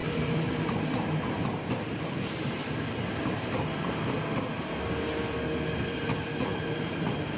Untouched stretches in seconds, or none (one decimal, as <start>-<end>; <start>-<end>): 4.0-6.5